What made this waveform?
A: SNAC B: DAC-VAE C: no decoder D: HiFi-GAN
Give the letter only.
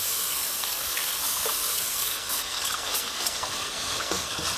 A